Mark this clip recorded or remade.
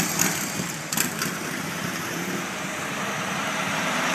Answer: remade